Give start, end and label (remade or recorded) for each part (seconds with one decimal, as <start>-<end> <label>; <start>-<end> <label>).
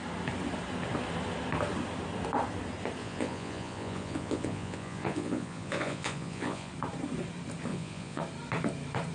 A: 0.0-3.0 recorded; 3.0-6.7 remade; 6.7-7.7 recorded; 7.7-8.2 remade; 8.2-9.1 recorded